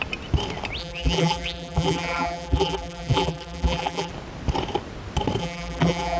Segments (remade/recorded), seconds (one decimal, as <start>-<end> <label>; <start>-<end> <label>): 0.0-0.8 recorded; 0.8-4.1 remade; 4.1-5.4 recorded; 5.4-6.2 remade